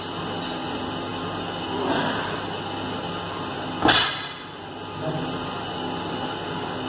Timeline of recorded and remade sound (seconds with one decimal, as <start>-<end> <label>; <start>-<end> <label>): 0.0-6.9 recorded